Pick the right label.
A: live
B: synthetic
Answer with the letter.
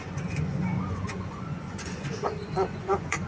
B